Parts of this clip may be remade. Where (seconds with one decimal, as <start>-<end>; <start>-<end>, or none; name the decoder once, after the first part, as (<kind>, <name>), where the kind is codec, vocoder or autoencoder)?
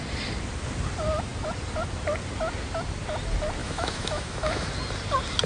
3.6-4.7 (autoencoder, DAC-VAE)